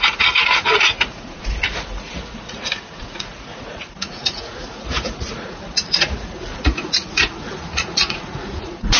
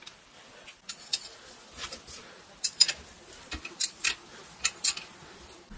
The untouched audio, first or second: second